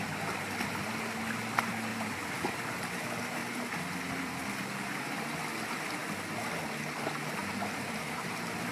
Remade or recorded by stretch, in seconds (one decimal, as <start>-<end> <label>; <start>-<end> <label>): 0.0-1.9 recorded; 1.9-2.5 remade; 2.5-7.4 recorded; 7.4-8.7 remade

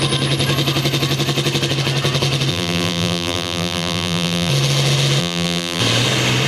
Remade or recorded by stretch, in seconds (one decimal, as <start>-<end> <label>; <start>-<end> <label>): 0.0-2.5 recorded; 2.5-4.5 remade; 4.5-5.2 recorded; 5.2-5.8 remade; 5.8-6.5 recorded

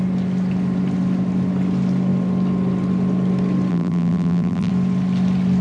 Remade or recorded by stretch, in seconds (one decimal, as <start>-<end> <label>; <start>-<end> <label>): 0.0-3.7 recorded; 3.7-4.7 remade; 4.7-5.6 recorded